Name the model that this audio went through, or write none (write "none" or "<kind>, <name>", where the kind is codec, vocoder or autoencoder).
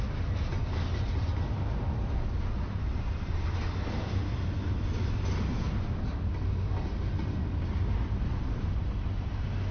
none